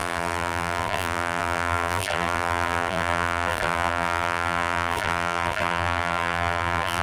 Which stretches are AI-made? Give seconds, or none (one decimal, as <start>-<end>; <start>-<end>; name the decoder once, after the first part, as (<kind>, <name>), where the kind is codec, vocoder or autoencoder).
0.0-7.0 (vocoder, BigVGAN v2)